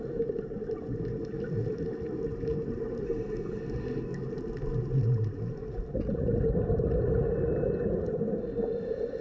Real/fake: real